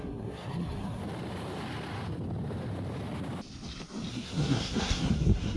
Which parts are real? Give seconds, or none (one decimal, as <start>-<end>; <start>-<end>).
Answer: 1.0-4.1